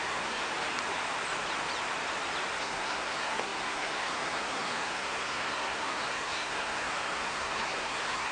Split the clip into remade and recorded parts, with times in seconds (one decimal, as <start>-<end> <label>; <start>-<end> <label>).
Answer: 0.0-0.5 remade; 0.5-2.6 recorded; 2.6-8.3 remade